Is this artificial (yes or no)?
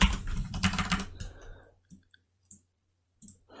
yes